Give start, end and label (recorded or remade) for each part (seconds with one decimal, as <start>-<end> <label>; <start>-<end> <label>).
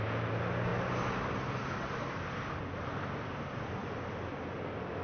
0.0-5.0 recorded